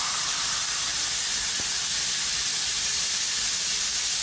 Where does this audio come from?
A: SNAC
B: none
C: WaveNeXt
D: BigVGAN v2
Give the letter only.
B